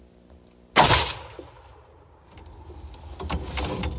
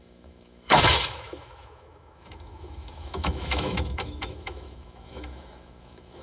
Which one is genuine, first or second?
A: first